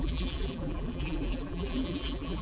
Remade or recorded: remade